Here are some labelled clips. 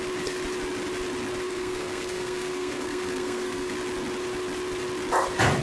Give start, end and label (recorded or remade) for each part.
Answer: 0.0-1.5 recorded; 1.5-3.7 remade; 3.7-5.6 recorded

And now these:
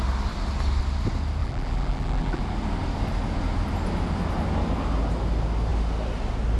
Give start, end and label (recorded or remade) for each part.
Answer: 0.0-1.4 recorded; 1.4-2.4 remade; 2.4-6.6 recorded

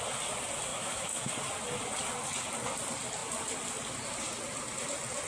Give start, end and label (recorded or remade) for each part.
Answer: 0.0-0.7 recorded; 0.7-1.3 remade; 1.3-5.3 recorded